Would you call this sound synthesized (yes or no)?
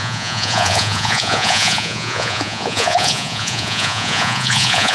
yes